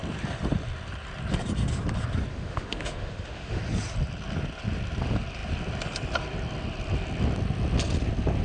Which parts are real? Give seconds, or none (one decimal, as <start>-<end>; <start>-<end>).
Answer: 0.0-2.3; 3.6-8.4